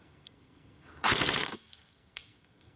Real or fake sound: fake